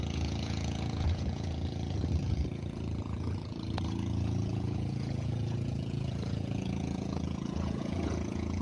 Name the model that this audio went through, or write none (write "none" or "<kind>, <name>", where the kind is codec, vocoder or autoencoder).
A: vocoder, Vocos